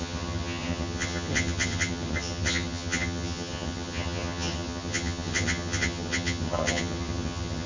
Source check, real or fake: fake